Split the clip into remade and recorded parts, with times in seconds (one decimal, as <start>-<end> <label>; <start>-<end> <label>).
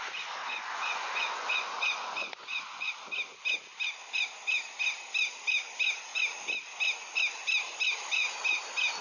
0.0-0.4 recorded; 0.4-2.9 remade; 2.9-9.0 recorded